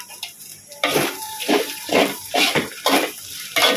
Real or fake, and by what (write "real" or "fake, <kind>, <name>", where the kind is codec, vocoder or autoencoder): fake, vocoder, BigVGAN v2